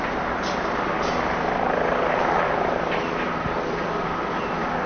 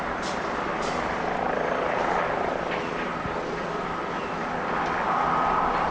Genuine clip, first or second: first